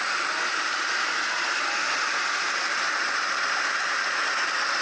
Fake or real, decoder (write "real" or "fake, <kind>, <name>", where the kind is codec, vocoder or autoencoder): real